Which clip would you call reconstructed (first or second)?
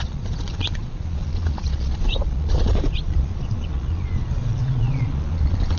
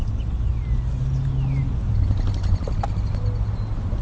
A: first